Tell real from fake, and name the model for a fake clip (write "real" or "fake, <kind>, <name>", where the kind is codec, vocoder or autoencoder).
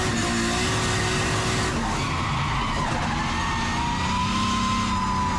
real